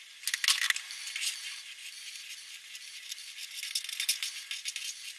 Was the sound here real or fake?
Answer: real